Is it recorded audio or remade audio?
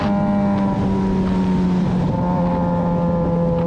recorded